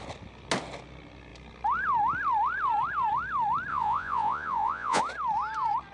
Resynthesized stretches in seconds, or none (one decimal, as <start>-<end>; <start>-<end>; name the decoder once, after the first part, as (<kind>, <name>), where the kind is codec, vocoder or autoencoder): 3.7-5.0 (vocoder, Vocos)